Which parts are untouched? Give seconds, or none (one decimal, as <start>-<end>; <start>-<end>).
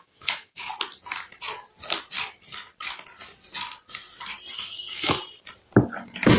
0.7-4.5; 5.2-6.4